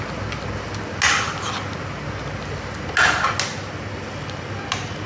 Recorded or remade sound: recorded